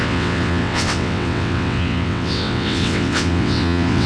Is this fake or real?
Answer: fake